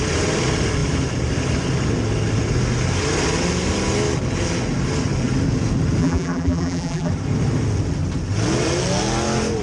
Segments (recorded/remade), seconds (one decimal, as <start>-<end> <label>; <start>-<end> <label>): 0.0-6.0 recorded; 6.0-7.1 remade; 7.1-9.6 recorded